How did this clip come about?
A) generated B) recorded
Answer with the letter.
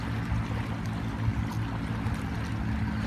B